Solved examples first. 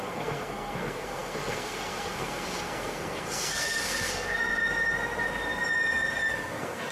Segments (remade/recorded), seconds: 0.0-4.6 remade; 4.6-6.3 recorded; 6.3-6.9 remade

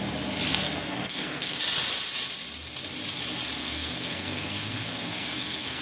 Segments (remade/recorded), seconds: 0.0-0.5 recorded; 0.5-1.6 remade; 1.6-3.6 recorded; 3.6-5.8 remade

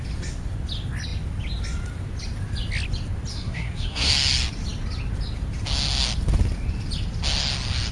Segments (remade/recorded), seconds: 0.0-3.3 recorded; 3.3-4.1 remade; 4.1-7.9 recorded

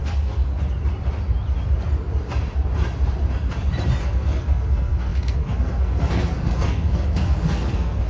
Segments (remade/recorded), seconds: 0.0-0.5 remade; 0.5-4.0 recorded; 4.0-8.1 remade

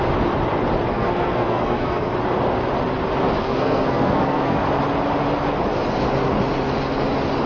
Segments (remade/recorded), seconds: 0.0-0.9 recorded; 0.9-2.1 remade; 2.1-3.4 recorded; 3.4-4.6 remade; 4.6-7.5 recorded

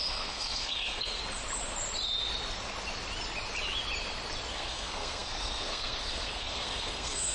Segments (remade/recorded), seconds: 0.0-1.2 remade; 1.2-4.5 recorded; 4.5-7.3 remade

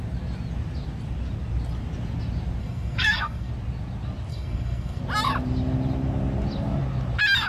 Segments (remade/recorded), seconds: 0.0-2.6 recorded; 2.6-3.5 remade; 3.5-4.3 recorded; 4.3-5.0 remade; 5.0-7.5 recorded